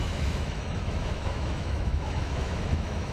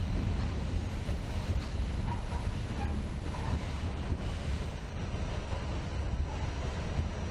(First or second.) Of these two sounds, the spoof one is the first